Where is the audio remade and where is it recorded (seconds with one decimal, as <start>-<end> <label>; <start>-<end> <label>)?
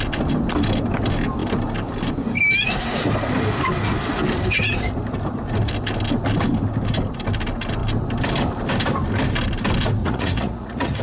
0.0-10.0 recorded; 10.0-11.0 remade